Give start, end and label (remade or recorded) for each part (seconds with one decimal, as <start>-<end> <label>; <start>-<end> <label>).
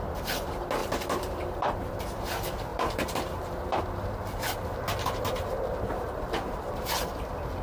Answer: 0.0-0.8 recorded; 0.8-1.9 remade; 1.9-2.7 recorded; 2.7-7.1 remade; 7.1-7.6 recorded